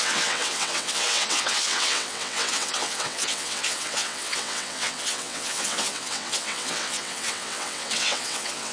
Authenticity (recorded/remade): remade